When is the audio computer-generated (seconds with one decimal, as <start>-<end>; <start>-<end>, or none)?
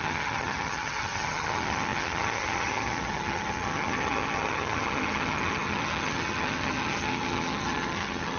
0.0-8.4